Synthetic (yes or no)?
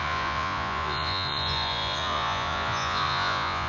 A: yes